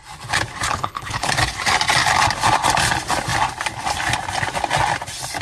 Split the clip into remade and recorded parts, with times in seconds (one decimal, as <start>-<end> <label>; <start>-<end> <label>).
0.0-0.7 recorded; 0.7-1.3 remade; 1.3-5.4 recorded